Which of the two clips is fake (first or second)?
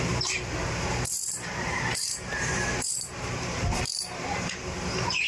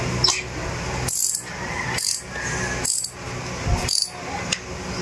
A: first